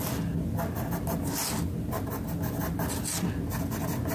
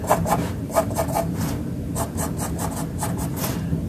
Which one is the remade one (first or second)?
second